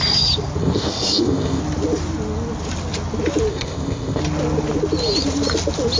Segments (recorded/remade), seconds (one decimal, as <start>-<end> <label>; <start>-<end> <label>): 0.0-0.6 recorded; 0.6-1.6 remade; 1.6-3.5 recorded; 3.5-4.2 remade; 4.2-6.0 recorded